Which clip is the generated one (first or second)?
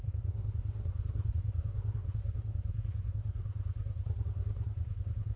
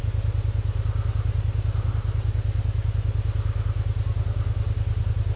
first